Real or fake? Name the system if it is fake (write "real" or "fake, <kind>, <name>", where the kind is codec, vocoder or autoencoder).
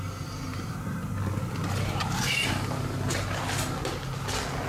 real